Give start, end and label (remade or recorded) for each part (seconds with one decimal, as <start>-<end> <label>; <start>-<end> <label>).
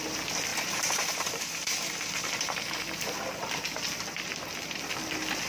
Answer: 0.0-0.5 recorded; 0.5-3.8 remade; 3.8-5.5 recorded